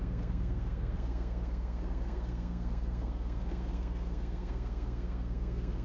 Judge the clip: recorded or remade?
remade